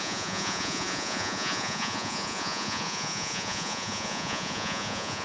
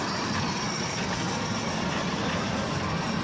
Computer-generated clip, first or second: first